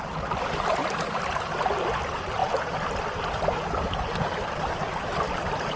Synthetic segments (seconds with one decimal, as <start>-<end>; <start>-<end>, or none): none